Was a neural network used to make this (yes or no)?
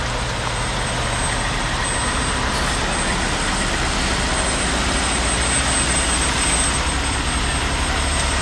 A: no